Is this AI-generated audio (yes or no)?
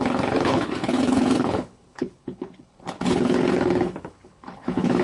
yes